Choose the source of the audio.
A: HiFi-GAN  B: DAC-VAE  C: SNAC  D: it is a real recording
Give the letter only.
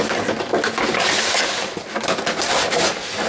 D